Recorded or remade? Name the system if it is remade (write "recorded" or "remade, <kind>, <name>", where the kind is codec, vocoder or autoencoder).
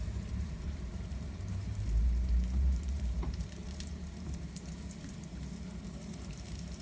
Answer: remade, vocoder, BigVGAN v2